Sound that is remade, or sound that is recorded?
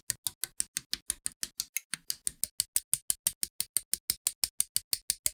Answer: recorded